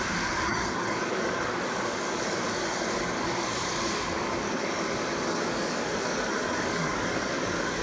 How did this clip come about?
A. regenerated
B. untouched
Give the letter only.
A